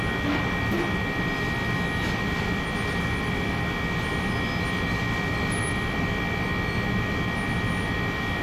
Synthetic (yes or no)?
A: no